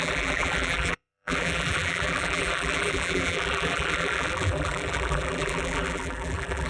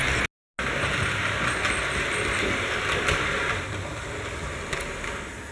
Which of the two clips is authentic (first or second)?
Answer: second